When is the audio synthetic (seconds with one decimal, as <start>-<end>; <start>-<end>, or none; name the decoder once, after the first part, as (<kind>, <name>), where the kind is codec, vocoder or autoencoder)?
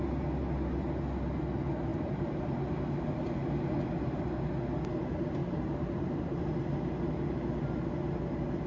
1.9-2.6 (vocoder, BigVGAN v2); 5.4-6.4